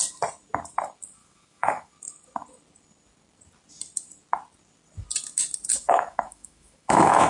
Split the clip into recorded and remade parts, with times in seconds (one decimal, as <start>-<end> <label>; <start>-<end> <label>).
0.0-1.2 recorded; 1.2-1.9 remade; 1.9-5.7 recorded; 5.7-7.3 remade